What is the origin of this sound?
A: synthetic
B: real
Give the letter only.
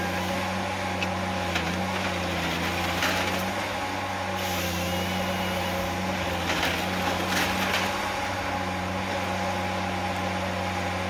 B